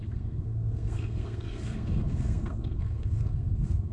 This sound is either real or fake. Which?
fake